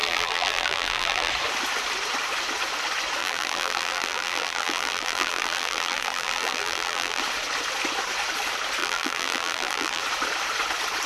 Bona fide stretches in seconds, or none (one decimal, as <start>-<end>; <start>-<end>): 1.3-3.2; 7.2-8.8; 10.0-11.1